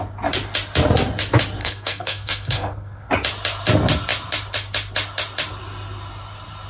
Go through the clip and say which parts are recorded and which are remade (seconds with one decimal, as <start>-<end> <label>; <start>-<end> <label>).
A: 0.0-1.6 recorded; 1.6-3.1 remade; 3.1-6.7 recorded